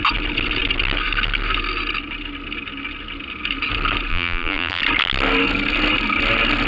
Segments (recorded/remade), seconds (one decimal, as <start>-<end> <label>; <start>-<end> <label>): 0.0-4.1 recorded; 4.1-4.8 remade; 4.8-6.7 recorded